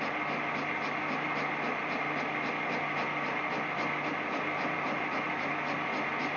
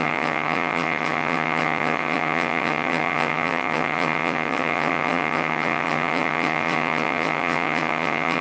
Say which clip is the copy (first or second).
second